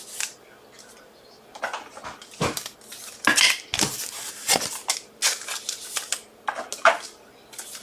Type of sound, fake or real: real